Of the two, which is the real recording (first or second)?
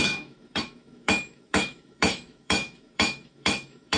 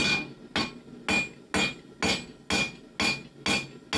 second